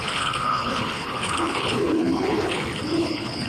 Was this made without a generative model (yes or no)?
no